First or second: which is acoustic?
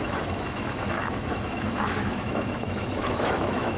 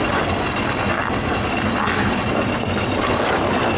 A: second